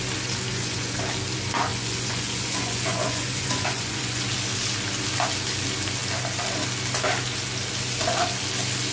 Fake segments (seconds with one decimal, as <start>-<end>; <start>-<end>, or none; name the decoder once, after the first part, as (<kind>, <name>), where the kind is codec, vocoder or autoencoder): 0.5-1.0 (vocoder, Vocos); 1.7-4.2